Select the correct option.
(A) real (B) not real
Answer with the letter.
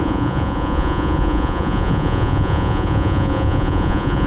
B